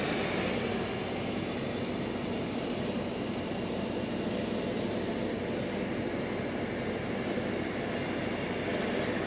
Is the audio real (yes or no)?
yes